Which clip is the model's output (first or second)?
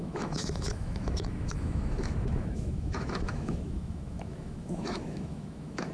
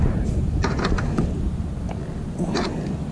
first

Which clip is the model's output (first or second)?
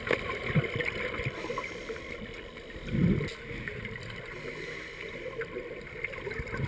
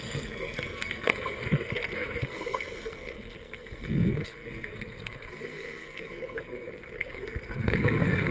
second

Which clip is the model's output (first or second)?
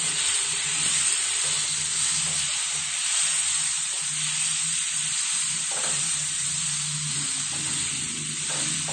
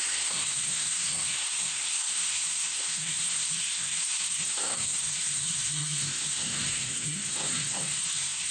second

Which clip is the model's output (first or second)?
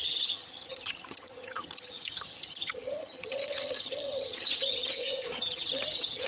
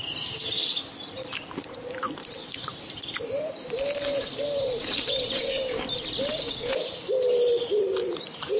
first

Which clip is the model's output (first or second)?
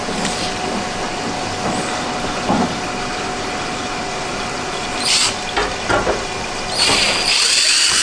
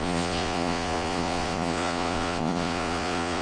second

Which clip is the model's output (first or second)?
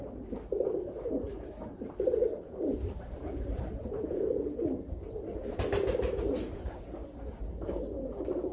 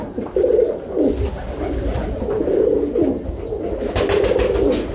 first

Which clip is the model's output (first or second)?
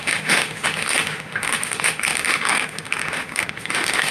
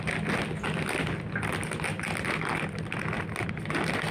first